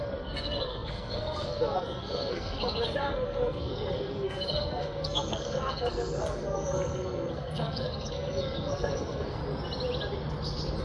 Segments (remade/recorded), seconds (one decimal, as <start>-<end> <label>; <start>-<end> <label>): 0.0-9.4 remade; 9.4-10.8 recorded